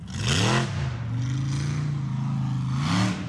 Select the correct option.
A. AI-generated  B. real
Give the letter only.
B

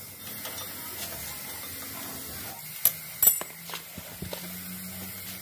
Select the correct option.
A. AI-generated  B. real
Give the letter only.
B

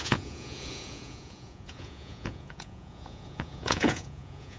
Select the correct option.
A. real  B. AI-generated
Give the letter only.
B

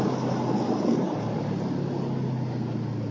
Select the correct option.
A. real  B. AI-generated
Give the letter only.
A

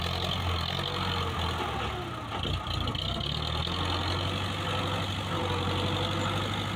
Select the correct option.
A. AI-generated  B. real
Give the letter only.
B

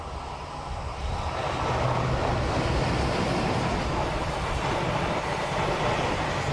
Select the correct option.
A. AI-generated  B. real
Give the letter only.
B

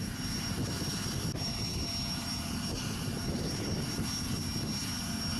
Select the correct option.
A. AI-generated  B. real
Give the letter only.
B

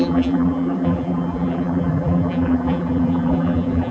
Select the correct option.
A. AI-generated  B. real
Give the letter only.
A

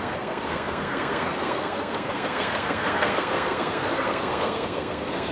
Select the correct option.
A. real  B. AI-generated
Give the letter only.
B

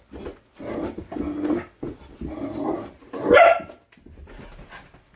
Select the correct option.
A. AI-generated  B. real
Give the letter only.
B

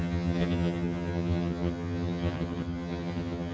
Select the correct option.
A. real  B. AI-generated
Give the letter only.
B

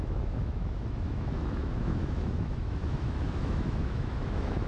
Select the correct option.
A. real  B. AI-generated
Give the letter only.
B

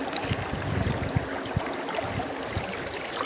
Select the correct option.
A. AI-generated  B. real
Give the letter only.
B